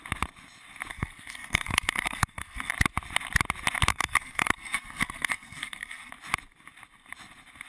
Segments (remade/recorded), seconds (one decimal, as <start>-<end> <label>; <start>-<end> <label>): 0.0-0.9 recorded; 0.9-2.7 remade; 2.7-3.9 recorded; 3.9-6.1 remade; 6.1-7.7 recorded